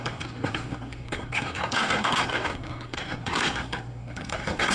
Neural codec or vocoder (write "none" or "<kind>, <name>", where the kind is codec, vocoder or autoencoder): codec, SNAC